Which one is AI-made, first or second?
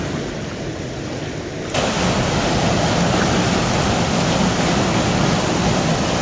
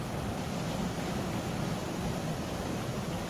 second